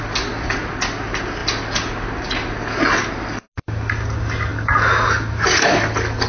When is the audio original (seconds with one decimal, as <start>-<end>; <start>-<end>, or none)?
0.0-6.3